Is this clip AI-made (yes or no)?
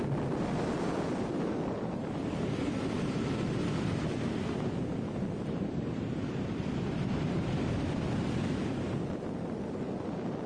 no